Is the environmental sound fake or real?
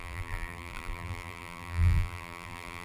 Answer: fake